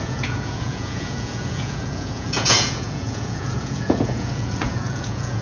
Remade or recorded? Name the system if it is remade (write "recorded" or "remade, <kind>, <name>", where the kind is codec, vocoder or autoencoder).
remade, vocoder, Vocos